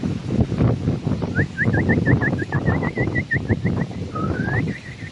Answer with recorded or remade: recorded